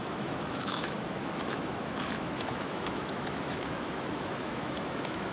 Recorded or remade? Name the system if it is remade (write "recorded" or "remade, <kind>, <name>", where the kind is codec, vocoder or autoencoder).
remade, autoencoder, DAC-VAE